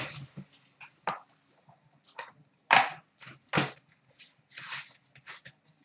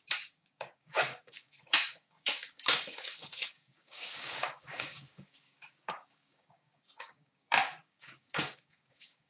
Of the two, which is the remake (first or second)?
second